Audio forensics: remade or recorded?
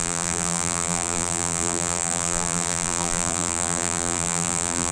remade